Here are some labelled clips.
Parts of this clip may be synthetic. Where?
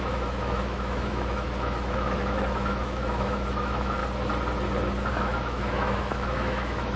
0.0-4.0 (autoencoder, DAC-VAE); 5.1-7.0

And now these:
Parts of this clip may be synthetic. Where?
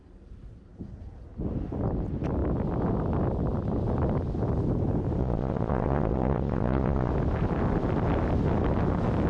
5.2-7.1 (vocoder, Vocos)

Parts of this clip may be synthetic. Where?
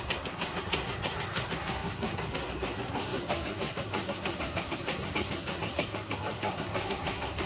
0.0-7.5 (codec, SNAC)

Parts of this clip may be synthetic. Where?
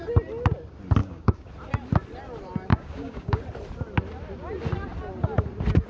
1.0-1.5 (codec, DAC); 2.7-3.4